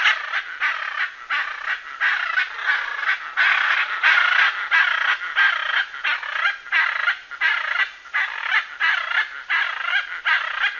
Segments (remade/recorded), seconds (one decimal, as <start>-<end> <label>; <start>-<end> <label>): 0.0-10.8 recorded